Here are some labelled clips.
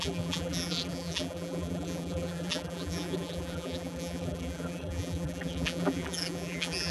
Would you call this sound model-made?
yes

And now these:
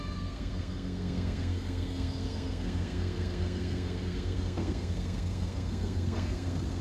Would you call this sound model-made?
yes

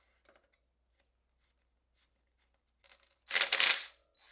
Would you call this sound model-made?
no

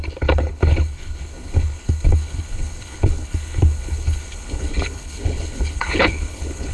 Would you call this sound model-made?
yes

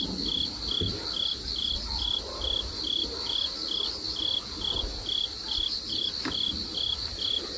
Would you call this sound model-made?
no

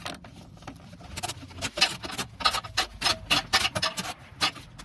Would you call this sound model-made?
no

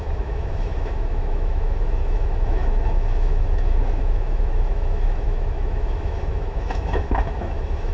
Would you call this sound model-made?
yes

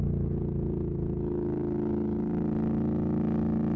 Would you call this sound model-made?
no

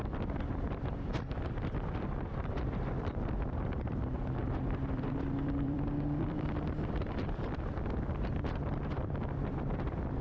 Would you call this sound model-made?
yes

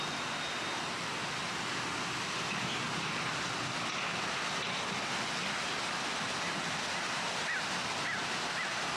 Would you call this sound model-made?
no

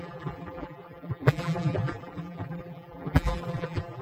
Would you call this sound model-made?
yes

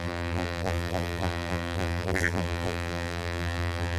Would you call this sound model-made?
yes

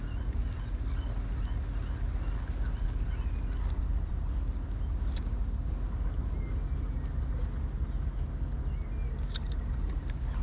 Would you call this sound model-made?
no